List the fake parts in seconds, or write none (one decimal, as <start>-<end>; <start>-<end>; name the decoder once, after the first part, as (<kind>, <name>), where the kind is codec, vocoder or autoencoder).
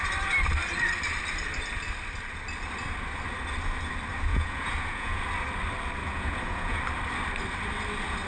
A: 4.3-5.2 (vocoder, Vocos); 6.0-6.8